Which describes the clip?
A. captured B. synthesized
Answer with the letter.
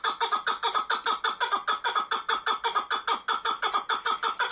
A